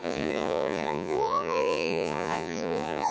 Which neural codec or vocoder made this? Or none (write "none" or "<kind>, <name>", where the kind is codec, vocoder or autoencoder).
vocoder, Vocos